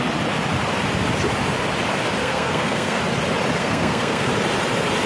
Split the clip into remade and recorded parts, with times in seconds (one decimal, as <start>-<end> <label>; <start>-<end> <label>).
0.0-2.2 recorded; 2.2-3.0 remade; 3.0-3.6 recorded; 3.6-4.3 remade; 4.3-5.1 recorded